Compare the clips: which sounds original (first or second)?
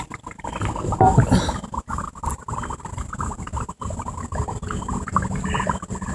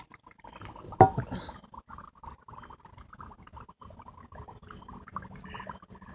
second